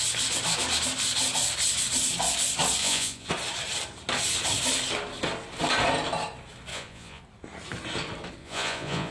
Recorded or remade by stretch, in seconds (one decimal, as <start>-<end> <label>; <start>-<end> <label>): 0.0-2.8 recorded; 2.8-3.3 remade; 3.3-6.7 recorded; 6.7-7.2 remade; 7.2-8.4 recorded; 8.4-9.1 remade